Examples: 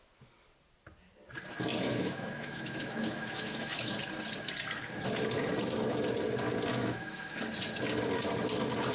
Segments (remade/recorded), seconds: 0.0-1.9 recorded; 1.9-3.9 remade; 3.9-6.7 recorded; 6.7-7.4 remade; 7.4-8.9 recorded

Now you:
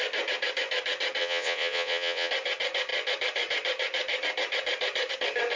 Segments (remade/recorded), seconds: 0.0-1.2 recorded; 1.2-2.3 remade; 2.3-5.6 recorded

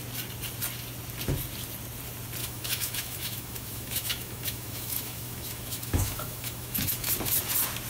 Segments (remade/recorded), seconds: 0.0-2.4 recorded; 2.4-7.1 remade; 7.1-7.9 recorded

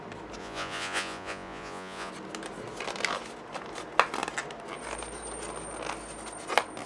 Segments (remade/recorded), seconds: 0.0-0.4 recorded; 0.4-2.1 remade; 2.1-6.9 recorded

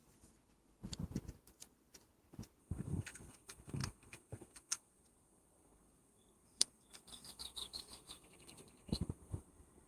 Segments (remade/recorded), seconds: 0.0-2.6 recorded; 2.6-9.9 remade

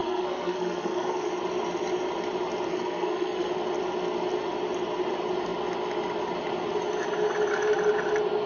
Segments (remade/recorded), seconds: 0.0-1.3 remade; 1.3-2.7 recorded; 2.7-3.5 remade; 3.5-8.5 recorded

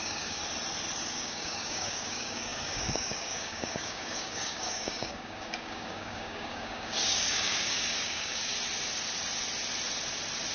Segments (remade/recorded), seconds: 0.0-0.4 remade; 0.4-1.1 recorded; 1.1-8.5 remade; 8.5-10.5 recorded